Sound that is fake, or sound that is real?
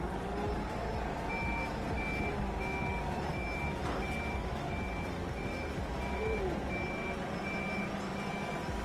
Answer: real